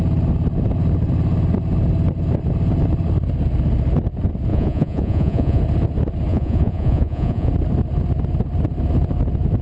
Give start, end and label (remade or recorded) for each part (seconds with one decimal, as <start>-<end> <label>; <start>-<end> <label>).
0.0-4.5 recorded; 4.5-5.6 remade; 5.6-6.3 recorded; 6.3-7.5 remade; 7.5-9.6 recorded